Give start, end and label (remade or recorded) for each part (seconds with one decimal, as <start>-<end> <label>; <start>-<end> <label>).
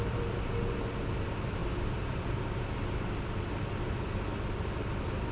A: 0.0-5.3 recorded